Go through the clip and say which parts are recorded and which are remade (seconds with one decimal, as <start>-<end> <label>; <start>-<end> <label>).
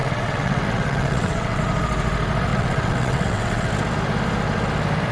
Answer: 0.0-1.6 remade; 1.6-2.5 recorded; 2.5-3.7 remade; 3.7-5.1 recorded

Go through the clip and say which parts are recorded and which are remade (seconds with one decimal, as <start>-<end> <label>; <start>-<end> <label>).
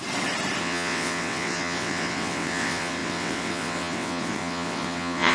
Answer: 0.0-0.6 recorded; 0.6-5.3 remade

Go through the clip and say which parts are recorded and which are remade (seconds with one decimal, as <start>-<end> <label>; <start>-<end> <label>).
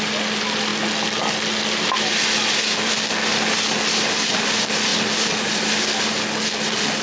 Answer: 0.0-7.0 recorded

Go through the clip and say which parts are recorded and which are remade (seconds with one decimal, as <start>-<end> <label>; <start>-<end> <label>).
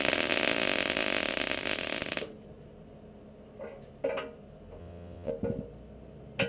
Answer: 0.0-4.8 recorded; 4.8-5.3 remade; 5.3-6.5 recorded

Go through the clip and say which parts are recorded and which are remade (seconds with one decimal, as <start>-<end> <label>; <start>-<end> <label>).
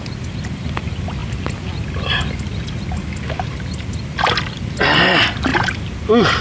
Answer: 0.0-6.4 recorded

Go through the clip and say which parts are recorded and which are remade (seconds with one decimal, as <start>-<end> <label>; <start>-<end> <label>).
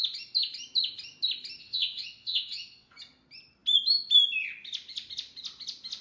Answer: 0.0-1.6 recorded; 1.6-2.9 remade; 2.9-6.0 recorded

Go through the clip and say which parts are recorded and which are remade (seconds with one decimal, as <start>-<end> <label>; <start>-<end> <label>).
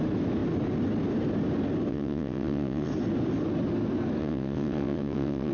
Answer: 0.0-1.9 recorded; 1.9-2.9 remade; 2.9-4.2 recorded; 4.2-5.5 remade